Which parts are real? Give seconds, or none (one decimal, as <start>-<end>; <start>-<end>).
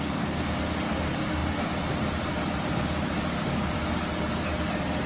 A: 0.0-1.4; 3.8-5.1